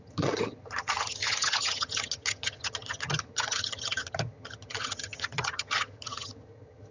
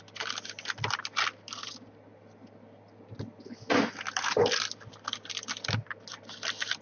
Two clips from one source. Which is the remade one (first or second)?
first